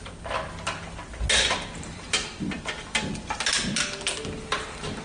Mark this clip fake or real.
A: real